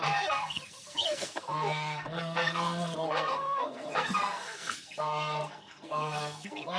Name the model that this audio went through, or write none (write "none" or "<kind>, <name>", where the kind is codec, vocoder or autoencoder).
codec, SNAC